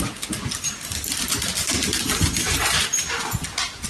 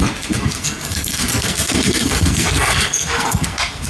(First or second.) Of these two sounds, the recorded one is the first